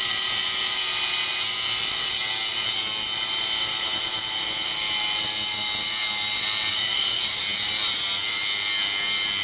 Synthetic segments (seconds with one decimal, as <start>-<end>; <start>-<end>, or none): 6.7-7.4